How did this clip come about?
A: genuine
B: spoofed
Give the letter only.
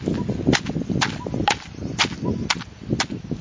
A